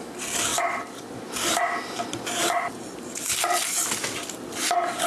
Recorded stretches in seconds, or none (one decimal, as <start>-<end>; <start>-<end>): 0.0-5.1